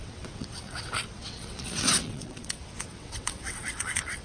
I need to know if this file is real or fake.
fake